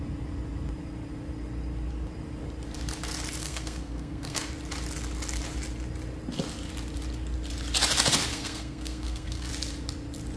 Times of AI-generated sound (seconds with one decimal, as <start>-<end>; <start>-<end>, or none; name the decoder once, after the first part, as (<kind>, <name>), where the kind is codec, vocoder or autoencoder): 3.4-4.5 (codec, SNAC); 8.3-9.5